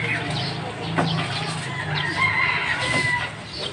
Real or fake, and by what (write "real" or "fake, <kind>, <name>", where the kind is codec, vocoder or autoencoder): real